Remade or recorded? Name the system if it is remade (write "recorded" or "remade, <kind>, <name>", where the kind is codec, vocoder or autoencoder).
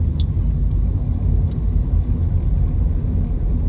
recorded